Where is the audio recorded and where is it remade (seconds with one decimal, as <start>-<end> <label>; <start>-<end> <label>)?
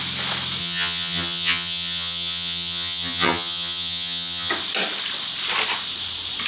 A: 0.0-0.6 recorded; 0.6-4.5 remade; 4.5-6.5 recorded